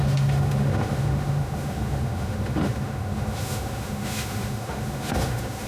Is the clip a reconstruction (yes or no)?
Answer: yes